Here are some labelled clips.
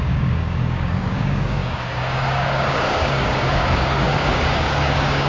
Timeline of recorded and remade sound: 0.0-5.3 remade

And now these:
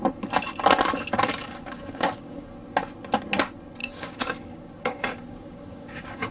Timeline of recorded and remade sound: 0.0-1.4 recorded; 1.4-2.5 remade; 2.5-3.8 recorded; 3.8-6.3 remade

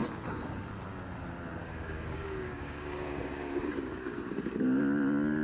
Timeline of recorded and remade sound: 0.0-1.6 recorded; 1.6-4.8 remade; 4.8-5.4 recorded

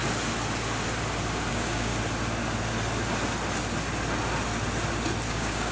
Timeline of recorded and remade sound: 0.0-1.5 recorded; 1.5-1.9 remade; 1.9-5.3 recorded; 5.3-5.7 remade

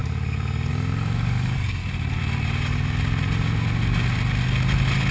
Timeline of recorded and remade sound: 0.0-0.7 recorded; 0.7-1.8 remade; 1.8-5.1 recorded